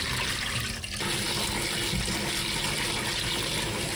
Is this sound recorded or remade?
recorded